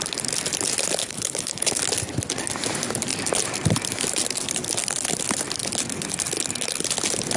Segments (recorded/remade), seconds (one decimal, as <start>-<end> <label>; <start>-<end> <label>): 0.0-1.0 recorded; 1.0-1.8 remade; 1.8-7.4 recorded